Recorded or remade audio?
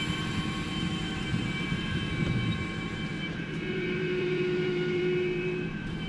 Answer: remade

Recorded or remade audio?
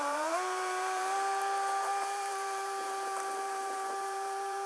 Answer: remade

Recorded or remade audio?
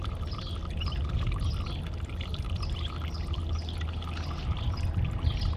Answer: recorded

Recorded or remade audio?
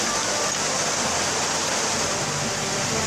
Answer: remade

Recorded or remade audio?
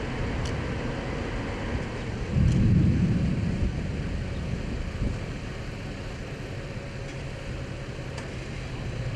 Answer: recorded